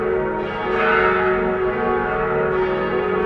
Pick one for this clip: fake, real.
real